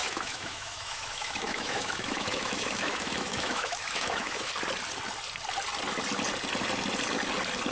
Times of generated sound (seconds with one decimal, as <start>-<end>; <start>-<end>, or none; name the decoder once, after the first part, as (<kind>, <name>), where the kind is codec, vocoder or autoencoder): 0.0-4.5 (autoencoder, DAC-VAE)